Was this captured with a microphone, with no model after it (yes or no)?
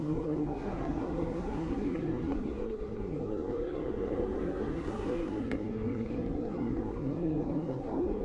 no